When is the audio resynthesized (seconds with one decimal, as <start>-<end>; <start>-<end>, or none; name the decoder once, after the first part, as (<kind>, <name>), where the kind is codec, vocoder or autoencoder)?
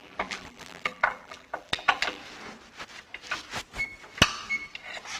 0.0-2.2 (vocoder, BigVGAN v2)